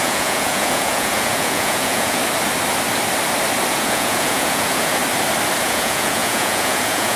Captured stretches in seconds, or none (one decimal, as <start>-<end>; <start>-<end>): 2.2-3.7; 5.0-5.6